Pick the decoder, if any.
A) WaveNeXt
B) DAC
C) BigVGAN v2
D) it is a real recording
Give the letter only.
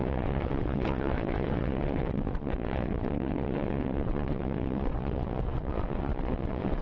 A